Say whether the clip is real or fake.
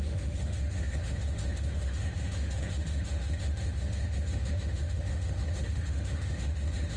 fake